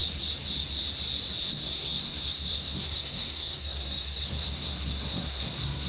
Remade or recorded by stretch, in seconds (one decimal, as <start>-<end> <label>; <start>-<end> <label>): 0.0-1.4 recorded; 1.4-5.9 remade